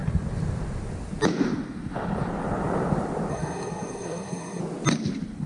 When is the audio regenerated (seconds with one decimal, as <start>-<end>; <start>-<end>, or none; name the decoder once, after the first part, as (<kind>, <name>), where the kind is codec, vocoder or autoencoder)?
3.3-4.6 (codec, SNAC)